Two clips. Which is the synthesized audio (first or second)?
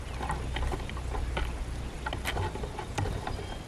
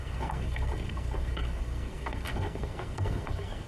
second